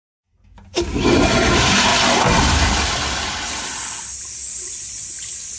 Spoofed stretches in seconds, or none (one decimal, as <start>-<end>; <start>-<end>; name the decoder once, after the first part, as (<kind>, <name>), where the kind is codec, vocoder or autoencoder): none

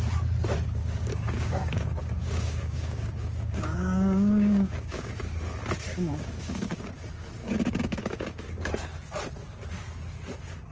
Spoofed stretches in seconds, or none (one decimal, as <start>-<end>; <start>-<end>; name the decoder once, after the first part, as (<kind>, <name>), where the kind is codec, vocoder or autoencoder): 0.8-5.1 (codec, DAC); 5.9-6.9; 7.4-8.7